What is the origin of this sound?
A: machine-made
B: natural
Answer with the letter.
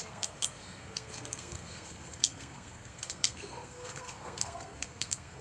A